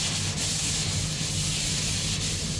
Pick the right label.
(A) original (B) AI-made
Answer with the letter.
A